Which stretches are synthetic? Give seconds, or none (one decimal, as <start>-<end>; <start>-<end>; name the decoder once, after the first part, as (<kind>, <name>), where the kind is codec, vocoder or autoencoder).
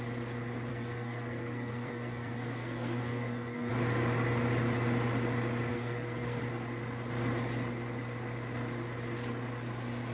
0.7-3.7 (codec, SNAC); 5.7-6.4